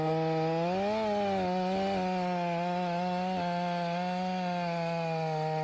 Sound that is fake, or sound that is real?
real